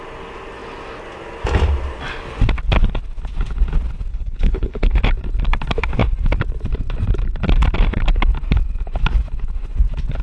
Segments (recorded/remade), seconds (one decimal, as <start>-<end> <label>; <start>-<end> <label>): 0.0-4.1 recorded; 4.1-5.0 remade; 5.0-10.2 recorded